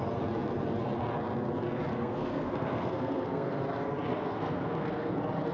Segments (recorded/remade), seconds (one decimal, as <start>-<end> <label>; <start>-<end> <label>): 0.0-1.9 recorded; 1.9-3.6 remade; 3.6-4.1 recorded; 4.1-5.1 remade; 5.1-5.5 recorded